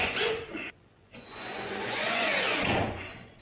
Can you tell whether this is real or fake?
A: fake